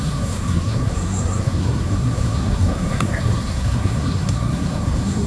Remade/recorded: remade